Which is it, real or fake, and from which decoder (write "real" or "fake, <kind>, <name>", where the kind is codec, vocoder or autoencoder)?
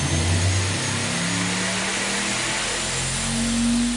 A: real